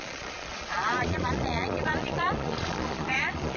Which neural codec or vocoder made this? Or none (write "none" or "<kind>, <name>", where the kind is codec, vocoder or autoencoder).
vocoder, Vocos